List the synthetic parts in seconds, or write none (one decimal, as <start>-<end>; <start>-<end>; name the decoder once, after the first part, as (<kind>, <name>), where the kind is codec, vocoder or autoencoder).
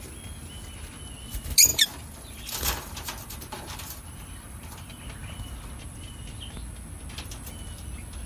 1.7-5.0 (vocoder, BigVGAN v2)